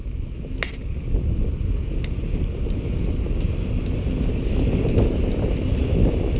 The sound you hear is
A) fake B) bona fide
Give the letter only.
B